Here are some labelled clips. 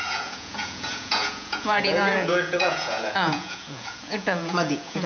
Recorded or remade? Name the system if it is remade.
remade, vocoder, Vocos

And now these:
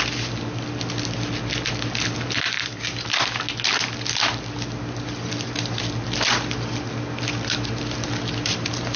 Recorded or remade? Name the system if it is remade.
recorded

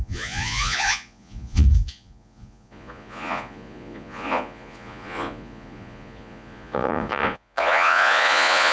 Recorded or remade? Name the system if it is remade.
remade, vocoder, Vocos